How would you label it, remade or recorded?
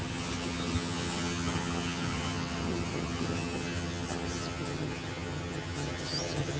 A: remade